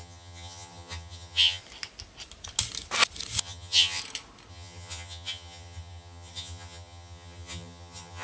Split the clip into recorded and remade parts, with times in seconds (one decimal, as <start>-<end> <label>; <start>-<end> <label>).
0.0-1.6 remade; 1.6-3.4 recorded; 3.4-4.0 remade; 4.0-4.5 recorded; 4.5-8.2 remade